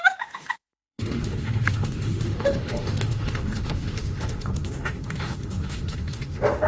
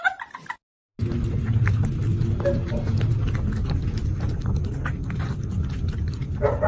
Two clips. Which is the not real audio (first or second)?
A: first